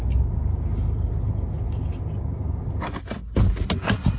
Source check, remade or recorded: recorded